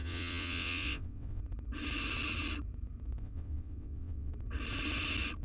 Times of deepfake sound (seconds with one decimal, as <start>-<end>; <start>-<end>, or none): 0.0-1.4; 3.2-4.3